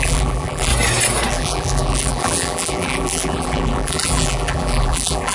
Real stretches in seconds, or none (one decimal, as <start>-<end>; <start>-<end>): 0.7-1.3